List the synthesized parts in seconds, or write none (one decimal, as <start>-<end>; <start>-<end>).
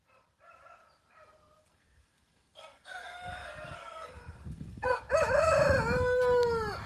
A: 1.6-5.0